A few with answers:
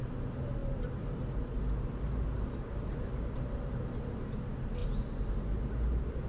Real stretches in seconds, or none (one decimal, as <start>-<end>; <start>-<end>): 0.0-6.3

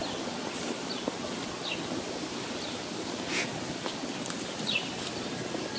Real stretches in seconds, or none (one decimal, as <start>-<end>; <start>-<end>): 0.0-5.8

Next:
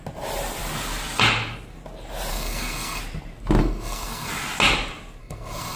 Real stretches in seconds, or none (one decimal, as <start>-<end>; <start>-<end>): 0.0-2.3; 3.0-3.6; 4.3-5.2

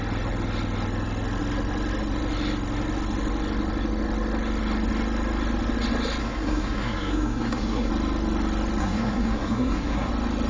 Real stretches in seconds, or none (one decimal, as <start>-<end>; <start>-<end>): 0.0-6.2; 7.9-8.8; 10.1-10.5

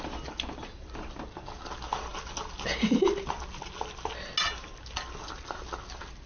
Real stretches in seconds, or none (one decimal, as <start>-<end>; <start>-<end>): 0.0-6.3

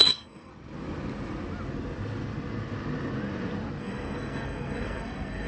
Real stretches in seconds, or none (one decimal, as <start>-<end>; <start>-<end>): 0.5-3.8

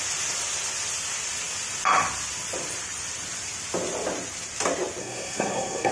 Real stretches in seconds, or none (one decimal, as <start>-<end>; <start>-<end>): 0.0-5.0

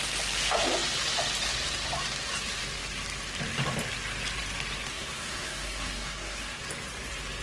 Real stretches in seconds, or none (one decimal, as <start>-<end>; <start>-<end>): 0.0-4.9; 6.6-7.4